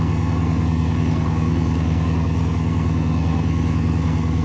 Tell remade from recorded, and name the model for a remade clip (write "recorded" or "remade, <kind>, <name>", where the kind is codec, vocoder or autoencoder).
remade, codec, SNAC